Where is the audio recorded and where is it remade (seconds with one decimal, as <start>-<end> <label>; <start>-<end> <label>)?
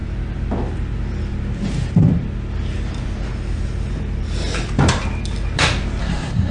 0.0-6.0 recorded; 6.0-6.5 remade